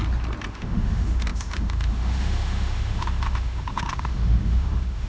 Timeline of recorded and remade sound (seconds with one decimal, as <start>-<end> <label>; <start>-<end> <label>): 0.0-0.5 recorded; 0.5-5.1 remade